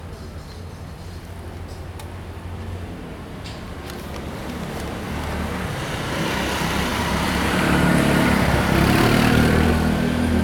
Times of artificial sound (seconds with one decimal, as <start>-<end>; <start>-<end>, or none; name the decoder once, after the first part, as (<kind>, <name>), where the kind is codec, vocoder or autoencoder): 6.9-9.7 (vocoder, BigVGAN v2)